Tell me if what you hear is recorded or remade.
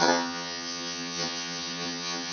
remade